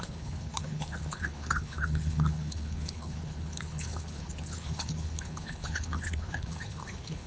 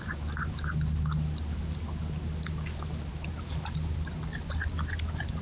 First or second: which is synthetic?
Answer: first